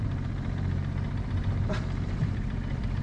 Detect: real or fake fake